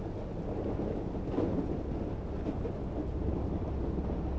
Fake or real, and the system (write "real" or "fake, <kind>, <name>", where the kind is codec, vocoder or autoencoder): real